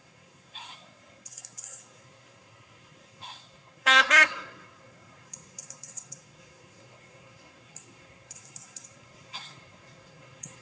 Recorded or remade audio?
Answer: remade